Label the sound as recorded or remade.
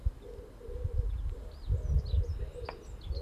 recorded